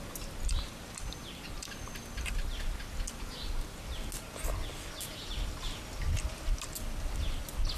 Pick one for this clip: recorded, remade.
recorded